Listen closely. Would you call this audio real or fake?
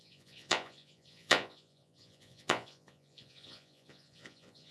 fake